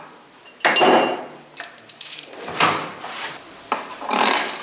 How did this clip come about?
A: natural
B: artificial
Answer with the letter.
B